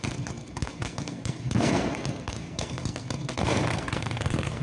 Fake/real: fake